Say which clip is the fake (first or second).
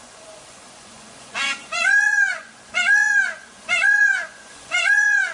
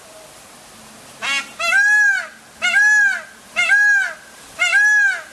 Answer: first